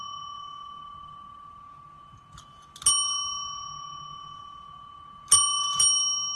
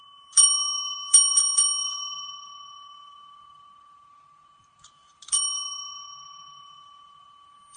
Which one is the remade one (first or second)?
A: second